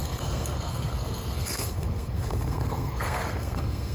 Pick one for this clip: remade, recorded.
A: remade